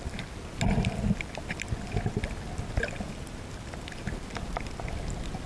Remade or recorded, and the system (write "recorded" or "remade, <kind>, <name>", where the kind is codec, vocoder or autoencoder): recorded